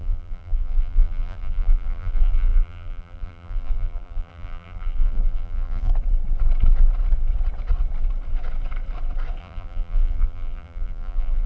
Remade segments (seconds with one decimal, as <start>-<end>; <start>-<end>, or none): 0.0-5.9; 9.4-11.5